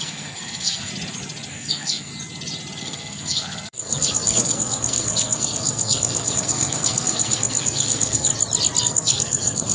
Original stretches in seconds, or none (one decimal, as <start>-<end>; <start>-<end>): 0.9-1.5; 2.1-2.8; 8.3-8.8